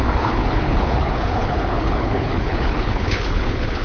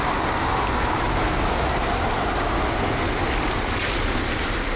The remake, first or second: first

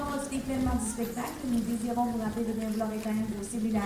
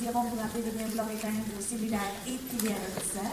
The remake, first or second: second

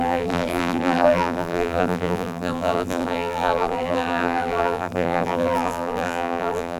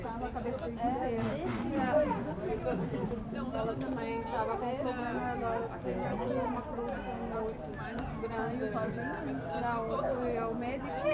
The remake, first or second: first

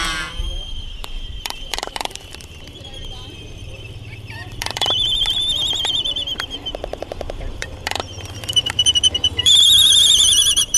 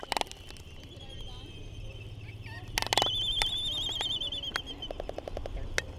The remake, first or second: first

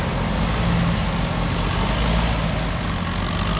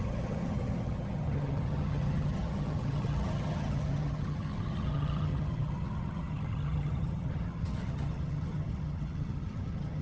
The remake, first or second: second